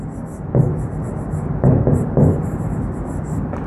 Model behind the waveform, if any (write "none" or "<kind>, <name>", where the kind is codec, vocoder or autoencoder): vocoder, BigVGAN v2